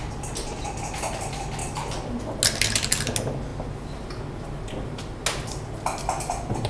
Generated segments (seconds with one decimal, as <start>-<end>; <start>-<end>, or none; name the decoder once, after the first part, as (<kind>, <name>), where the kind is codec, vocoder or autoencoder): none